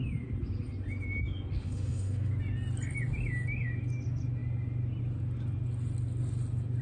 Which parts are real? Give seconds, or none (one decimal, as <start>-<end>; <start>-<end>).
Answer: 0.0-1.6; 2.3-6.8